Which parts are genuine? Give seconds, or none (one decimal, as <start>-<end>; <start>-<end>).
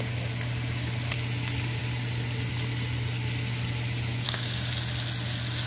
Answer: 0.0-4.1; 4.7-5.7